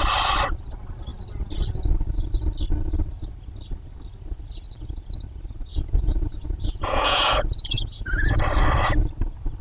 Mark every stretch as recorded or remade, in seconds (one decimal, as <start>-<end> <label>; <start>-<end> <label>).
0.0-5.7 recorded; 5.7-8.4 remade; 8.4-9.6 recorded